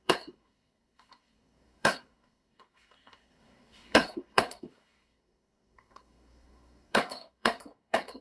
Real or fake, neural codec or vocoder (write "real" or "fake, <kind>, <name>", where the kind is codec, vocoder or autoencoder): fake, codec, SNAC